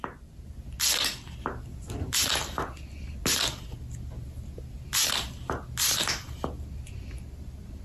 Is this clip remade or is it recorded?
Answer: recorded